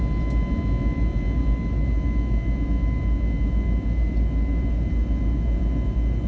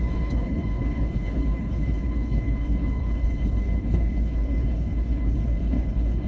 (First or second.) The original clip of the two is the first